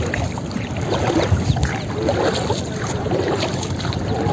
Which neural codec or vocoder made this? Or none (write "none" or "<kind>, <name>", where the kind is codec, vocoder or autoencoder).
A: none